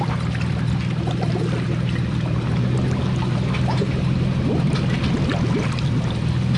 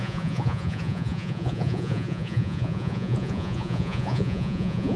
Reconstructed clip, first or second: second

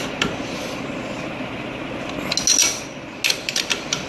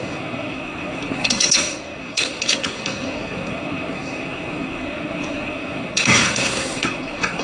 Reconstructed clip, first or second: second